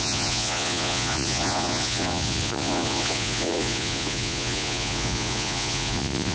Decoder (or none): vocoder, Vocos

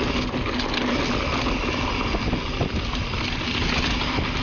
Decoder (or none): none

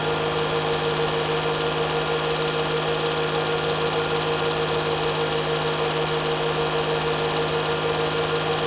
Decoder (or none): none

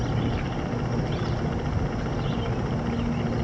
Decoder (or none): none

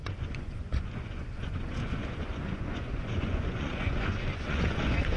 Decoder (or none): vocoder, Vocos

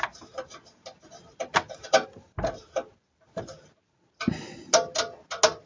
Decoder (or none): none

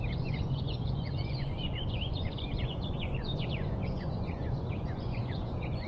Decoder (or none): vocoder, Vocos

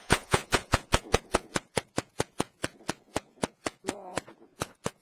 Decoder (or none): vocoder, Vocos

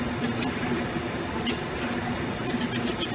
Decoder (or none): none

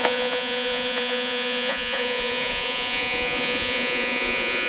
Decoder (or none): vocoder, Vocos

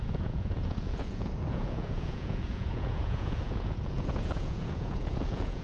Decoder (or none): vocoder, Vocos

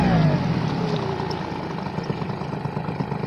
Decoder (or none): none